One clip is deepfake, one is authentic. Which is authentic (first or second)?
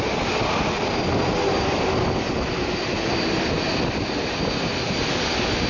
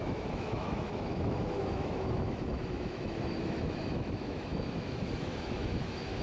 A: first